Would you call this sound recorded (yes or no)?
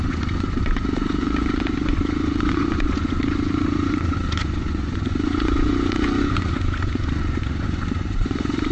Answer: no